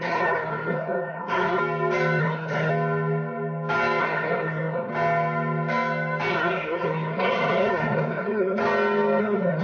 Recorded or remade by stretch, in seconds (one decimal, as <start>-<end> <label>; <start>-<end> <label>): 0.0-1.6 remade; 1.6-2.2 recorded; 2.2-2.7 remade; 2.7-4.0 recorded; 4.0-4.9 remade; 4.9-6.3 recorded; 6.3-8.6 remade; 8.6-9.2 recorded; 9.2-9.6 remade